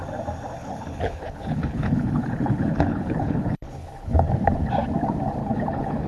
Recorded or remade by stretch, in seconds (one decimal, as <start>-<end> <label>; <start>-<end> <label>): 0.0-0.6 recorded; 0.6-4.3 remade; 4.3-5.4 recorded; 5.4-6.1 remade